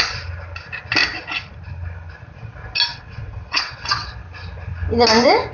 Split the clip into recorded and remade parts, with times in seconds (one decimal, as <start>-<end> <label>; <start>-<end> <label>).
0.0-2.9 recorded; 2.9-4.1 remade; 4.1-5.5 recorded